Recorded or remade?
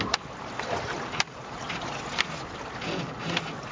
recorded